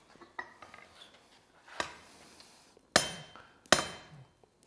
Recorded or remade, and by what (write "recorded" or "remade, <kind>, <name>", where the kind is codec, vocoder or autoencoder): recorded